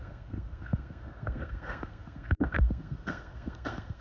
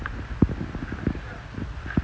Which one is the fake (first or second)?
first